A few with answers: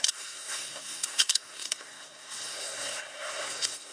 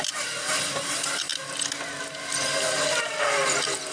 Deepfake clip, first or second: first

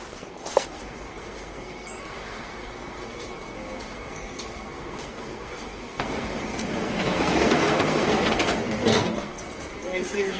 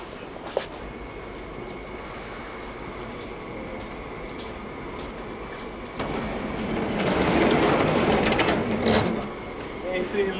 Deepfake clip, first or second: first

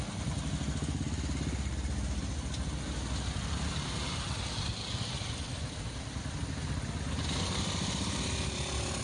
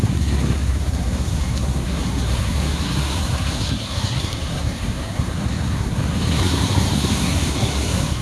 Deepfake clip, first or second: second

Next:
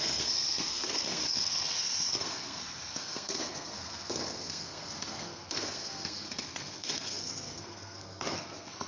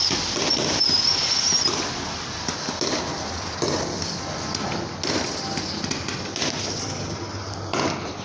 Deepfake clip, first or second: first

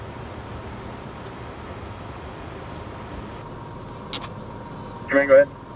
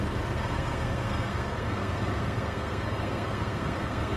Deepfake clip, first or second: second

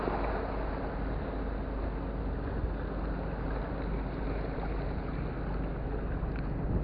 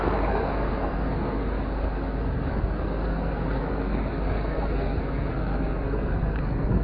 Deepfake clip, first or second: second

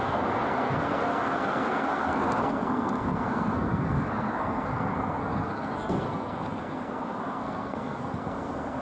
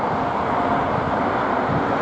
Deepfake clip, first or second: first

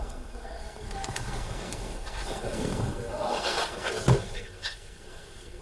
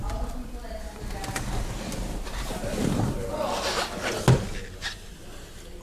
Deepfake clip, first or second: first